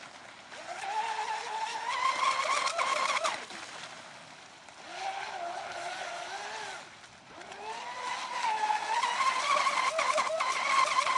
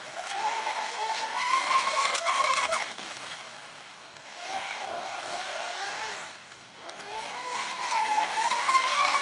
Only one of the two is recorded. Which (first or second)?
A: first